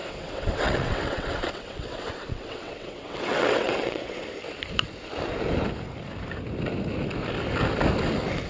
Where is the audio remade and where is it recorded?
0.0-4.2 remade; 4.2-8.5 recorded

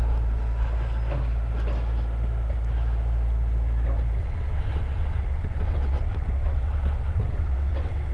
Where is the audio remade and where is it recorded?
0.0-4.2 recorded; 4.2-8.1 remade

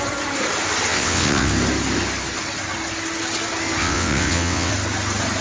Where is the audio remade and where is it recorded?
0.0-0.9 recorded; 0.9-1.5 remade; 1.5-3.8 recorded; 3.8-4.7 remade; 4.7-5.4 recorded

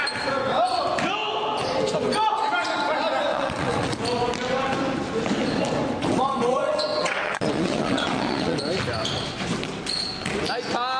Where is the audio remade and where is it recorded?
0.0-3.3 recorded; 3.3-3.9 remade; 3.9-6.0 recorded; 6.0-8.6 remade; 8.6-11.0 recorded

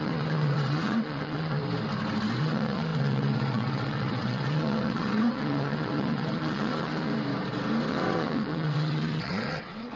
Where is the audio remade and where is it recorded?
0.0-1.6 remade; 1.6-2.4 recorded; 2.4-7.1 remade; 7.1-7.9 recorded; 7.9-10.0 remade

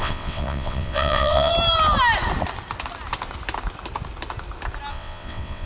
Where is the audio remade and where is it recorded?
0.0-1.5 remade; 1.5-4.9 recorded; 4.9-5.7 remade

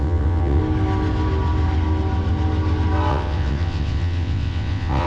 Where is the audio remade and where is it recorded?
0.0-0.6 remade; 0.6-3.1 recorded; 3.1-5.1 remade

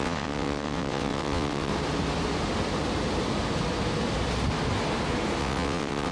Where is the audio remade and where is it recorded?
0.0-1.7 remade; 1.7-5.4 recorded; 5.4-6.1 remade